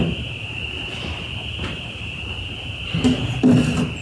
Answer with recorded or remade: recorded